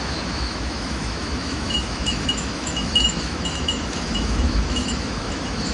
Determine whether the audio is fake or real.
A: fake